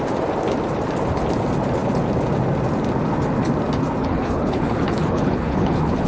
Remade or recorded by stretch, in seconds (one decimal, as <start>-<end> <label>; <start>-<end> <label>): 0.0-4.0 recorded; 4.0-6.1 remade